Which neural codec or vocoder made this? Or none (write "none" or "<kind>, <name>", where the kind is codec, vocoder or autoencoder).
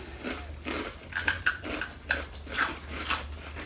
none